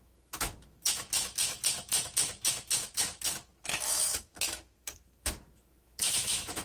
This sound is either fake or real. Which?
fake